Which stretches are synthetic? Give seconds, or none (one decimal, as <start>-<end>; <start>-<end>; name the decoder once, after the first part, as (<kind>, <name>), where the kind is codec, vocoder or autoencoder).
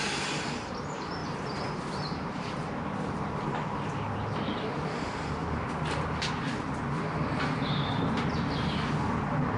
1.2-2.7 (vocoder, BigVGAN v2); 5.4-6.8